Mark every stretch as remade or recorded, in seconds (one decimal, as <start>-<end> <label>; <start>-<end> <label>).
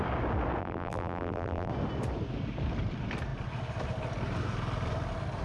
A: 0.0-0.6 recorded; 0.6-1.7 remade; 1.7-5.4 recorded